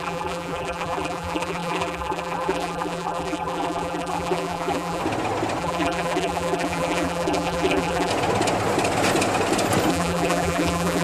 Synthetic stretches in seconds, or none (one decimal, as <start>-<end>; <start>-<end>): 0.0-5.0; 5.6-8.1; 9.9-11.0